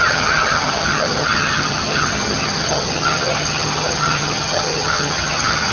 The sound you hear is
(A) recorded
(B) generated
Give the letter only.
B